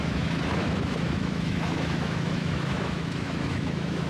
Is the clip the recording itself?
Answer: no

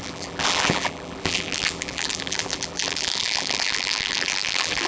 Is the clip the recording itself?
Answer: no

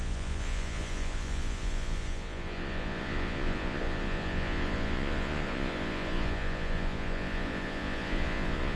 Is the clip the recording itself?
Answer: no